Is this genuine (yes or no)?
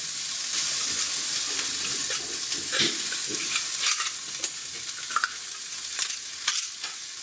yes